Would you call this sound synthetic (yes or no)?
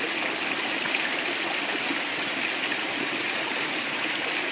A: no